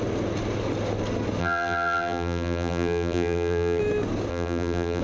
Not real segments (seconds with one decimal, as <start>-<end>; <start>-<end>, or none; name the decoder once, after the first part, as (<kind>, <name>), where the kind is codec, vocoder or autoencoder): 1.4-3.8 (vocoder, BigVGAN v2); 4.3-5.0